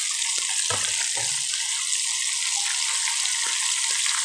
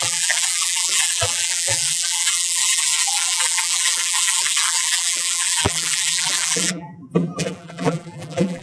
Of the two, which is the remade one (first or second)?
second